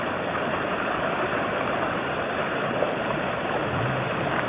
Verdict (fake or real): fake